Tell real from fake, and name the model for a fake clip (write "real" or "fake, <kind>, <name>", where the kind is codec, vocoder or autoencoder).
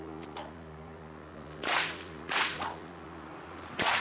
fake, vocoder, Vocos